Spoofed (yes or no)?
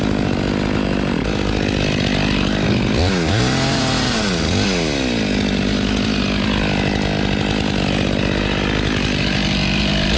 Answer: no